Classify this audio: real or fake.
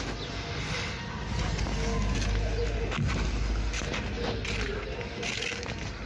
real